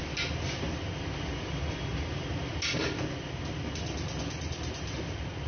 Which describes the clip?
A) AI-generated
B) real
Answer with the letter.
B